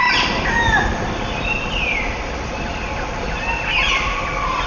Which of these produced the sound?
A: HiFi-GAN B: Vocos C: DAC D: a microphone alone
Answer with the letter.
D